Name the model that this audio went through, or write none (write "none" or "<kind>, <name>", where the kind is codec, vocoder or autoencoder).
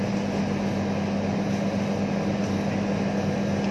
none